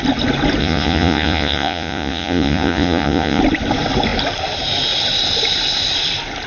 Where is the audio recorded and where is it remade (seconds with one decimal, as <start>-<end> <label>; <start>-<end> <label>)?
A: 0.0-0.6 recorded; 0.6-3.4 remade; 3.4-6.5 recorded